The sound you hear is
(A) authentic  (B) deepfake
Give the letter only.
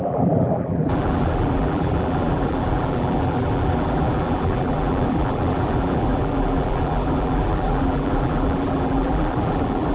B